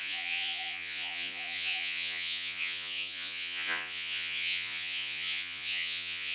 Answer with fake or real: fake